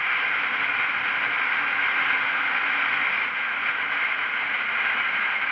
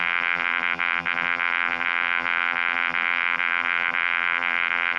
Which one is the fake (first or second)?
second